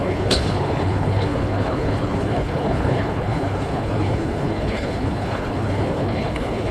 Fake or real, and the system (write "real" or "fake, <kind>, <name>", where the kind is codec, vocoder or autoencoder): fake, codec, HILCodec